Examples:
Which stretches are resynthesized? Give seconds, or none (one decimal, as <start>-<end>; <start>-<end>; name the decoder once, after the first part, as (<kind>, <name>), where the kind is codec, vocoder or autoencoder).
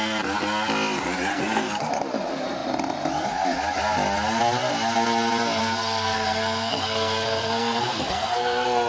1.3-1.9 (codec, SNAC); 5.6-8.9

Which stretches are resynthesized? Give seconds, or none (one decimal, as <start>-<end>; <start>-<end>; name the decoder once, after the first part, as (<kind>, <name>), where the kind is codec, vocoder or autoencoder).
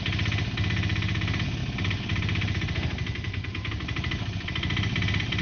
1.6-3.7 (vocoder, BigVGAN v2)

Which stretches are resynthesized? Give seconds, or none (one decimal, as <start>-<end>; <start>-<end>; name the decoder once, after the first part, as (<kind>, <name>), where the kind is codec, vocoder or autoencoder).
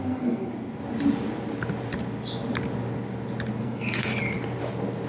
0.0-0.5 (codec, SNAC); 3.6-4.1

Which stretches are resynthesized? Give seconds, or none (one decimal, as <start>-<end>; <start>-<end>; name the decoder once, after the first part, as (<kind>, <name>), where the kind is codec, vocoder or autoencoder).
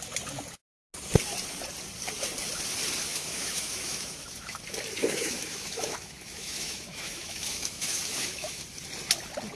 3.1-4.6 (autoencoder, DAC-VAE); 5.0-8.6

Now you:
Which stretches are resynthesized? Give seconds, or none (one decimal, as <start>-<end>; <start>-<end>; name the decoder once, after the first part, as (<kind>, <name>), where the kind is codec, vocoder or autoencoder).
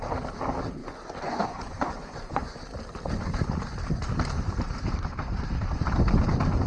0.8-2.6 (vocoder, Vocos)